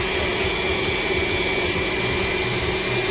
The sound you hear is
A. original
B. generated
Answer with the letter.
A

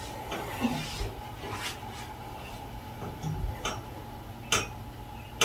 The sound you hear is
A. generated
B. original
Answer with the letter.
B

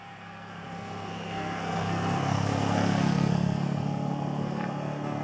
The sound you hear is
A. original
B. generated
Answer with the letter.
B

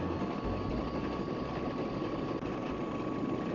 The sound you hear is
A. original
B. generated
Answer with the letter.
A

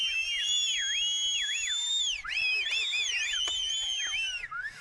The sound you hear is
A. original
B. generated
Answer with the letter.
A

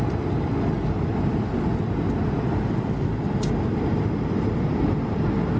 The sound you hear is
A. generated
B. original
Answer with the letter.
B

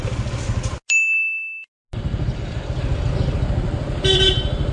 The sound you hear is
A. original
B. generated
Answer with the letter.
A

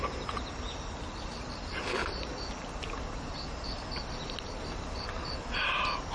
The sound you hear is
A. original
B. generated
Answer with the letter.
A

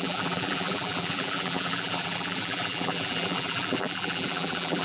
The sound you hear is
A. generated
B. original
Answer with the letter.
A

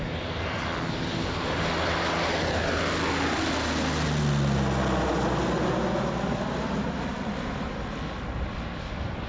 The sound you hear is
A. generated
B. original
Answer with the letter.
B